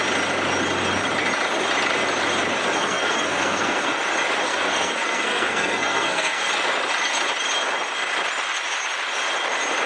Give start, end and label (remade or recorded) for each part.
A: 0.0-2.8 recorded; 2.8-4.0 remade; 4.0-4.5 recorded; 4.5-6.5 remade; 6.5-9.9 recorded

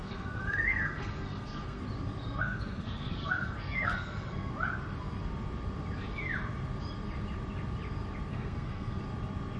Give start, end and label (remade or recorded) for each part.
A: 0.0-1.8 remade; 1.8-2.2 recorded; 2.2-4.5 remade; 4.5-8.3 recorded; 8.3-9.0 remade; 9.0-9.6 recorded